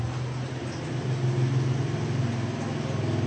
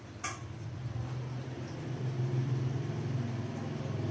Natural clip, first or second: first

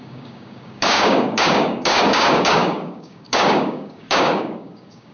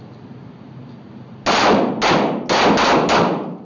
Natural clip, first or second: second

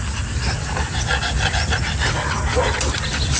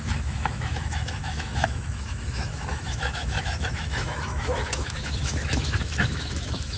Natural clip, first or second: first